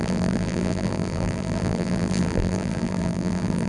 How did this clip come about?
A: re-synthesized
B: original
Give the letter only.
A